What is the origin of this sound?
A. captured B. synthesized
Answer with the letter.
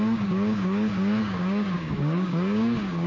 B